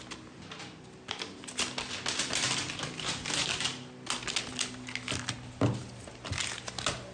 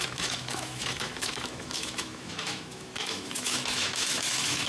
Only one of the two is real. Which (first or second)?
first